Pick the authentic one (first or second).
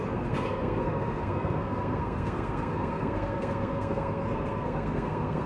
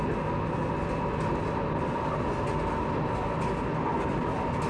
second